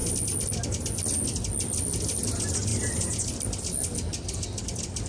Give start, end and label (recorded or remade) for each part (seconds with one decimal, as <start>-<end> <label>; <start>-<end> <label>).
0.0-5.1 recorded